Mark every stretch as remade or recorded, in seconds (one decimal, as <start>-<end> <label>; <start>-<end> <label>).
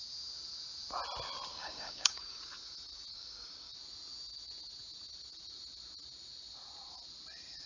0.0-1.5 recorded; 1.5-2.4 remade; 2.4-3.1 recorded; 3.1-3.7 remade; 3.7-7.7 recorded